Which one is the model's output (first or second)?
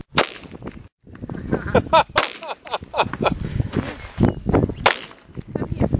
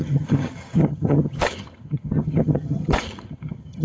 second